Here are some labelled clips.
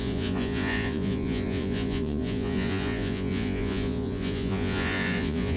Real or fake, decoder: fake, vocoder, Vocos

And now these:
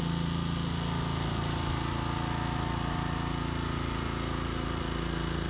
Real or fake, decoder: real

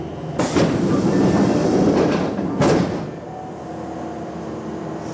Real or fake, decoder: real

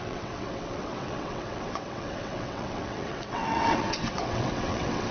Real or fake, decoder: fake, vocoder, WaveNeXt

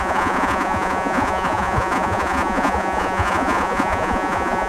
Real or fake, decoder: fake, vocoder, Vocos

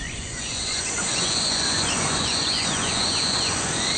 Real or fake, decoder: fake, vocoder, Vocos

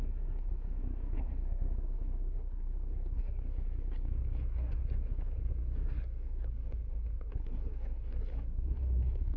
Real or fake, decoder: fake, codec, SNAC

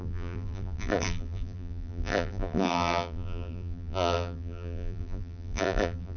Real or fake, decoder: fake, vocoder, BigVGAN v2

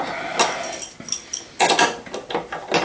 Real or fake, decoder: real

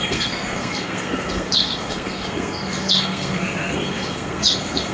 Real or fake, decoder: fake, codec, SNAC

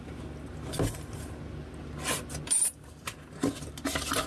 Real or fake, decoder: real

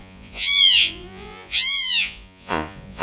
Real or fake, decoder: fake, vocoder, Vocos